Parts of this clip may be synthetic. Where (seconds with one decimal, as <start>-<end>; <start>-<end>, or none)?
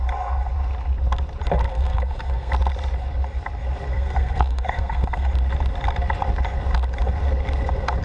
1.7-2.5; 3.9-5.3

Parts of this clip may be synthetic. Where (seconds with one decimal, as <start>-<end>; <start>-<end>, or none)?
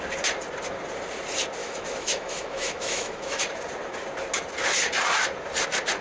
1.6-3.4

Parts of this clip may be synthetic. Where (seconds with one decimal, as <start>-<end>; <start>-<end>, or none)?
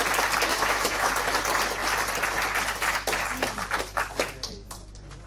0.5-1.1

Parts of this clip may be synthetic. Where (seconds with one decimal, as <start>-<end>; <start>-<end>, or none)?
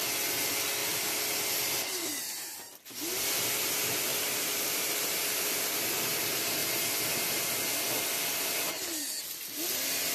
0.8-1.4; 4.1-5.5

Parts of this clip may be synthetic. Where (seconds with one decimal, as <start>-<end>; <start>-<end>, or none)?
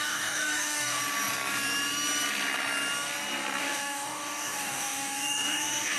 0.0-1.0; 3.6-6.0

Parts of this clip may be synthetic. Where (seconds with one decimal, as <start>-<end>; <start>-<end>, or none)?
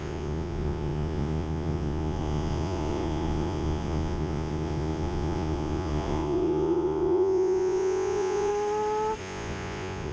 0.0-8.5; 9.2-10.1